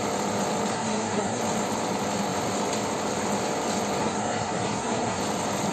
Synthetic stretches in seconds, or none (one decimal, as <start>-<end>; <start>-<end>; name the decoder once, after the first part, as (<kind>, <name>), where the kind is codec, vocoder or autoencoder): 0.7-1.4 (codec, SNAC); 4.0-5.2

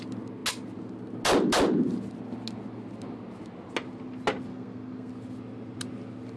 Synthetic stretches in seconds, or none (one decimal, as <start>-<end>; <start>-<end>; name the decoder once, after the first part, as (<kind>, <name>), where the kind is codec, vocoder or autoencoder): 4.5-5.1 (codec, SNAC)

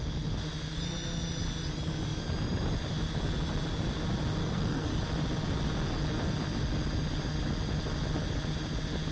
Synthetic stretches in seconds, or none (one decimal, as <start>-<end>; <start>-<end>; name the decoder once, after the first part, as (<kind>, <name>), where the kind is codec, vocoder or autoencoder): 4.4-5.0 (codec, SNAC)

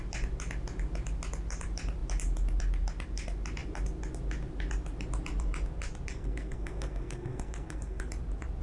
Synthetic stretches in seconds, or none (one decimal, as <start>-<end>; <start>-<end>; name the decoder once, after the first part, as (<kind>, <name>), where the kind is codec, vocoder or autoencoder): 6.1-8.1 (codec, SNAC)

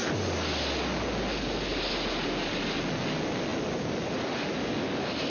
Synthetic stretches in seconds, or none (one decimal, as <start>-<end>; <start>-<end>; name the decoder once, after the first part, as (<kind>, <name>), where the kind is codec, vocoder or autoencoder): none

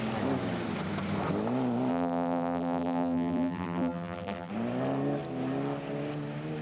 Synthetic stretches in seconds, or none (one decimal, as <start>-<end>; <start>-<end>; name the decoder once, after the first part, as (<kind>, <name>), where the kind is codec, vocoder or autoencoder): 1.9-4.5 (vocoder, BigVGAN v2)

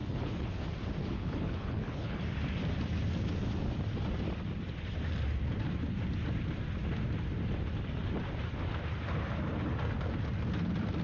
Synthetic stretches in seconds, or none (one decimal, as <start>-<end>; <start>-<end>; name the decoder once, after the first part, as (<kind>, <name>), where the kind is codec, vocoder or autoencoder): 0.0-0.5 (codec, HILCodec); 1.0-2.2

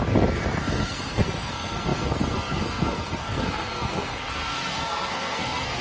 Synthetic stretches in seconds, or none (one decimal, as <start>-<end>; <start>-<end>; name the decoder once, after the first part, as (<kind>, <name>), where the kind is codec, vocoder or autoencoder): 0.6-5.8 (codec, SNAC)